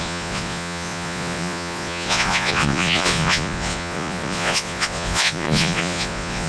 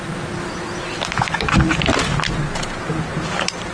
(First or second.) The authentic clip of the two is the second